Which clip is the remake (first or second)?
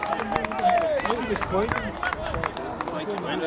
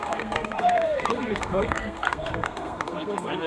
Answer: second